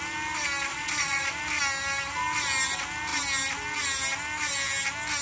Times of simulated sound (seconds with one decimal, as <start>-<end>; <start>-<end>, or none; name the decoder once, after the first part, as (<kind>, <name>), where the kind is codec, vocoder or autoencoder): 0.7-1.3 (vocoder, Vocos)